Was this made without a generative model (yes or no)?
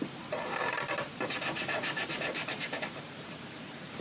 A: no